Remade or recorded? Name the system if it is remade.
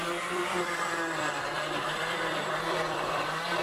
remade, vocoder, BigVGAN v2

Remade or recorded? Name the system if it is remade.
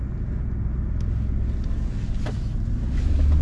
recorded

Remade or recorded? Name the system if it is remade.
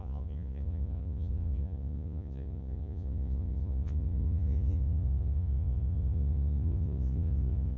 remade, vocoder, Vocos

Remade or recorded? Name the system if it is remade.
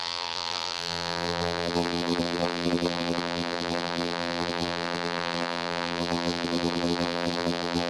remade, vocoder, BigVGAN v2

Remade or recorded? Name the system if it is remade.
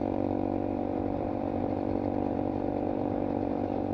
remade, vocoder, BigVGAN v2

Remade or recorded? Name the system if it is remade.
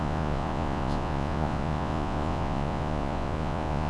remade, vocoder, Vocos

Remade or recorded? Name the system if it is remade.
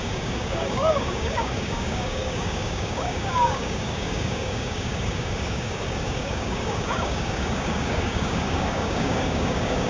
remade, codec, DAC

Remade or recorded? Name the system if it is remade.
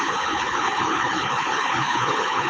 remade, codec, HILCodec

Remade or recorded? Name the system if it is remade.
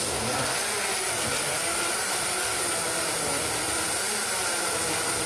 recorded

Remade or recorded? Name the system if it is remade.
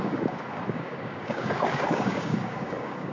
remade, codec, DAC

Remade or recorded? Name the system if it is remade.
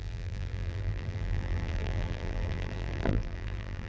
remade, vocoder, BigVGAN v2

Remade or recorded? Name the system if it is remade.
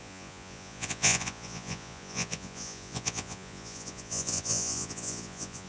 remade, vocoder, Vocos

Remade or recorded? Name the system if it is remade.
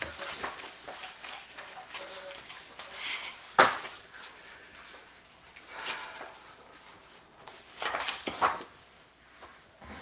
recorded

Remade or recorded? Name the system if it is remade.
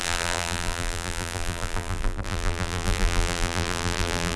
remade, vocoder, BigVGAN v2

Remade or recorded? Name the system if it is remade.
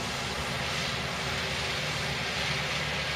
recorded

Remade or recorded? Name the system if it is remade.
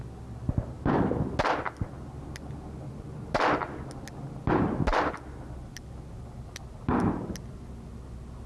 recorded